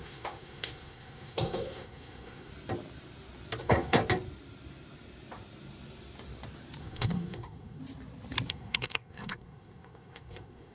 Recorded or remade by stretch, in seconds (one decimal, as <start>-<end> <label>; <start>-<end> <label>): 0.0-2.5 remade; 2.5-3.6 recorded; 3.6-4.0 remade; 4.0-6.8 recorded; 6.8-7.8 remade; 7.8-8.5 recorded; 8.5-10.7 remade